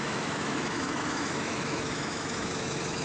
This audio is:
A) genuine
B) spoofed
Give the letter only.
B